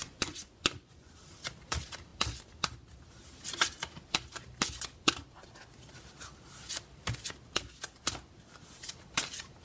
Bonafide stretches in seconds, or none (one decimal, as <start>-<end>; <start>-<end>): 1.1-9.6